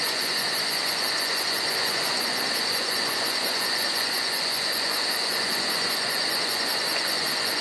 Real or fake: fake